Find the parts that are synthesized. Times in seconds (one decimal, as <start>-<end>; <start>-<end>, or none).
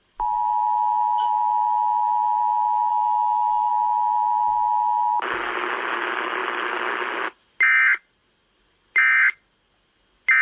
2.9-3.7